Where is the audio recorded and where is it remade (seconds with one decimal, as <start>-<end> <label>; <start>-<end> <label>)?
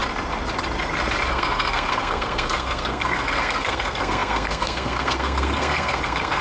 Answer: 0.0-1.3 recorded; 1.3-6.4 remade